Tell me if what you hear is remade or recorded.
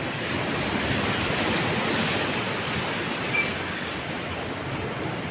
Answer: recorded